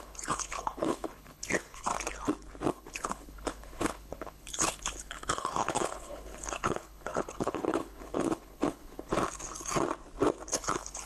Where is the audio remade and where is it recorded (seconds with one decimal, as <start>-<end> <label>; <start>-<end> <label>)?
0.0-1.9 remade; 1.9-2.7 recorded; 2.7-9.1 remade; 9.1-10.5 recorded; 10.5-11.1 remade